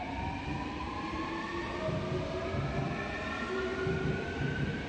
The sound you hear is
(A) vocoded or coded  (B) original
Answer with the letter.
B